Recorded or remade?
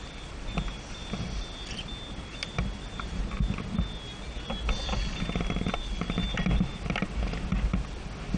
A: recorded